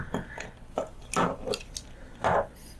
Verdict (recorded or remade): recorded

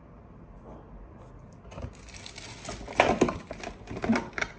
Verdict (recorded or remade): recorded